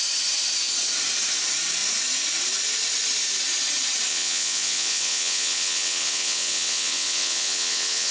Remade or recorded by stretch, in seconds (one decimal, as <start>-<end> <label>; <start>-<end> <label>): 0.0-4.1 recorded; 4.1-8.1 remade